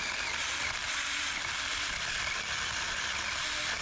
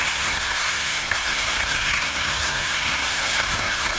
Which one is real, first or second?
first